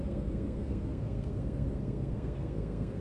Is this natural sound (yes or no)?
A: no